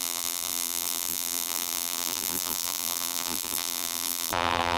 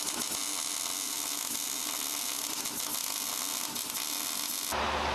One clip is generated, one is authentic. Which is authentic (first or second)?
second